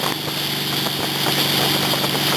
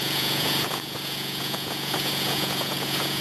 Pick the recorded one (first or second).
first